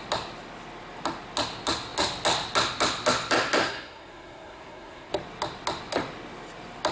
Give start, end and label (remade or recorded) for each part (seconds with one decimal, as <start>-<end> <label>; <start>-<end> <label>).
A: 0.0-3.6 recorded; 3.6-5.1 remade; 5.1-6.9 recorded